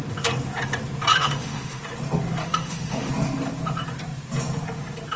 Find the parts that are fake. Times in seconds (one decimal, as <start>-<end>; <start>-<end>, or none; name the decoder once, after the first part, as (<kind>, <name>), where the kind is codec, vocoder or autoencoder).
1.1-1.8 (autoencoder, DAC-VAE); 2.4-3.1